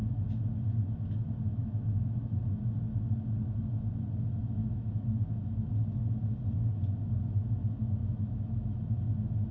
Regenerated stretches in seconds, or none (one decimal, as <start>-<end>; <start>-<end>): 1.5-2.6; 4.6-5.7; 8.0-9.0